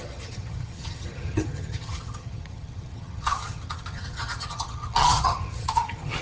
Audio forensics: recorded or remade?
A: remade